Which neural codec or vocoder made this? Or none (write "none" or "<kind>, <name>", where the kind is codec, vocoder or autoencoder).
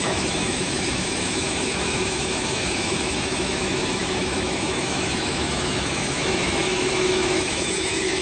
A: autoencoder, DAC-VAE